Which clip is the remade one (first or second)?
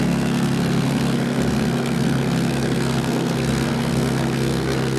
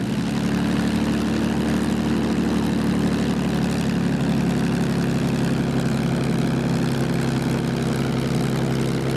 first